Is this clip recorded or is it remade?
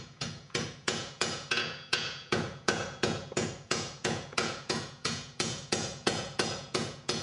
remade